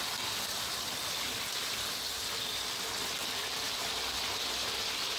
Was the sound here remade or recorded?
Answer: recorded